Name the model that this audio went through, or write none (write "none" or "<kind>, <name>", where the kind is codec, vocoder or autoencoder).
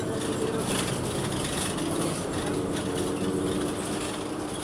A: none